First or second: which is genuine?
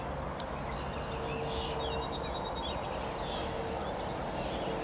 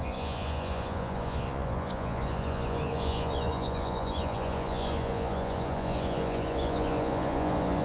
first